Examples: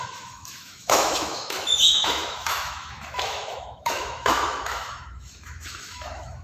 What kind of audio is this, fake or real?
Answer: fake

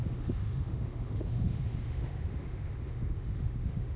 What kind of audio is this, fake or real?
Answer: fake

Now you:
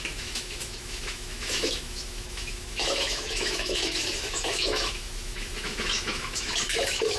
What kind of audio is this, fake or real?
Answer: fake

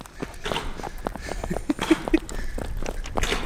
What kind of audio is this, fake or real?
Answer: real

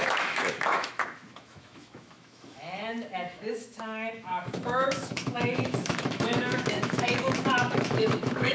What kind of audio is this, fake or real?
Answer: fake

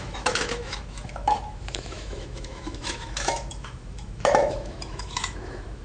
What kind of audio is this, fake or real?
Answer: fake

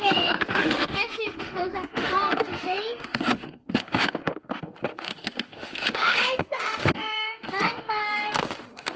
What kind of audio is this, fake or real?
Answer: fake